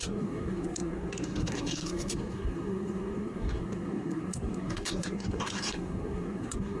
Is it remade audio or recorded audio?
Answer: remade